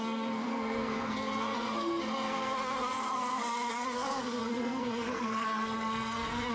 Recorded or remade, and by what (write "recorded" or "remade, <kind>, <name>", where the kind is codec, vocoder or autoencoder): remade, codec, SNAC